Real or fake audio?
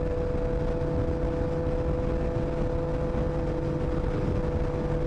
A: real